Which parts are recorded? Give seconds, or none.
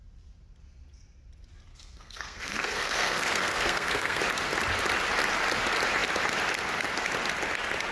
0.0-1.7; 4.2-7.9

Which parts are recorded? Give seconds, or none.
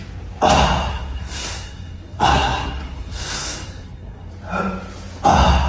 0.0-0.9; 4.3-5.7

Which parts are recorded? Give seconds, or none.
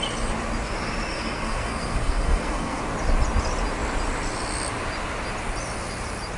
0.0-1.1; 2.8-6.4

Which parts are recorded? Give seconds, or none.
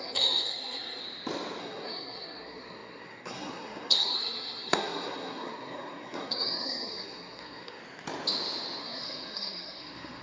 1.0-1.6; 7.8-8.8